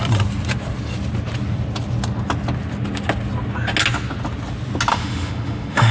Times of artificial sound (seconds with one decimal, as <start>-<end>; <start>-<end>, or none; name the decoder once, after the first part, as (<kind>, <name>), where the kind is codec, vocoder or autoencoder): 4.9-5.9 (autoencoder, DAC-VAE)